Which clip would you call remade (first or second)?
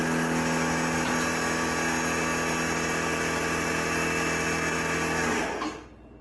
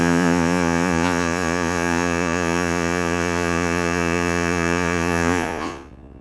second